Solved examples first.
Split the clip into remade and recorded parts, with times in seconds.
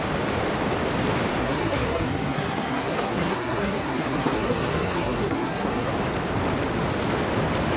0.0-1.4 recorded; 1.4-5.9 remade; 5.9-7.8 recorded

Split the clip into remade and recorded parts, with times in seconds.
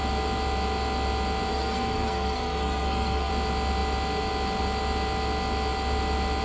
0.0-1.5 recorded; 1.5-3.3 remade; 3.3-6.4 recorded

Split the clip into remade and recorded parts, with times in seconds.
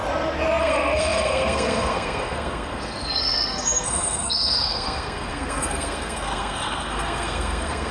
0.0-0.6 recorded; 0.6-7.9 remade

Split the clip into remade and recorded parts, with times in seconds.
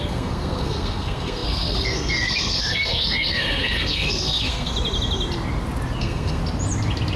0.0-4.7 remade; 4.7-6.0 recorded; 6.0-6.4 remade; 6.4-7.2 recorded